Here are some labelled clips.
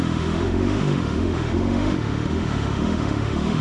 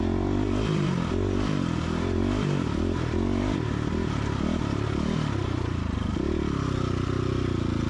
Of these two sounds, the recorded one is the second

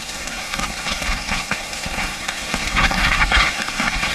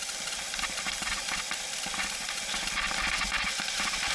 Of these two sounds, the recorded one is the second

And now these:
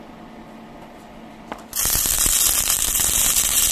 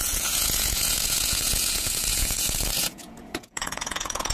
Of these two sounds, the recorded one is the first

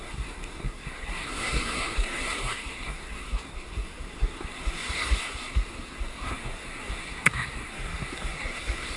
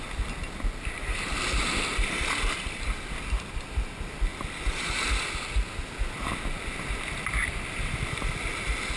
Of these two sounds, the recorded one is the second